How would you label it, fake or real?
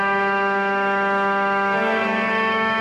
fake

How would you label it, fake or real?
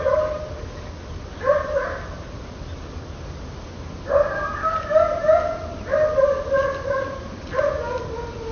real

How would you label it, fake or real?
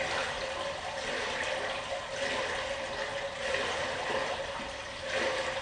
real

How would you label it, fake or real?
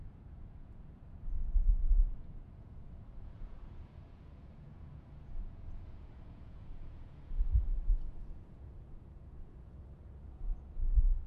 fake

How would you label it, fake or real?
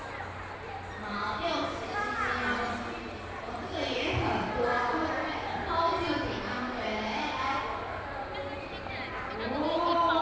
real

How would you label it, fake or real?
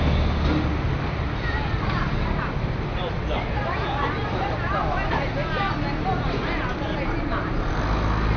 real